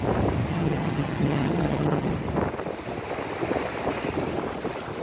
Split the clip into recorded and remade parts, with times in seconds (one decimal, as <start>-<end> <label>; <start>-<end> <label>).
0.0-0.5 recorded; 0.5-2.1 remade; 2.1-5.0 recorded